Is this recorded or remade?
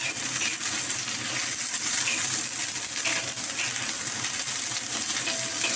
recorded